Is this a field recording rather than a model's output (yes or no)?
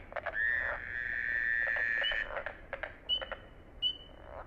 yes